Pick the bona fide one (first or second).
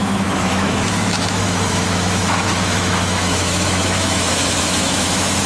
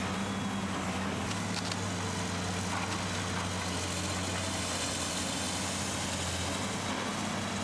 second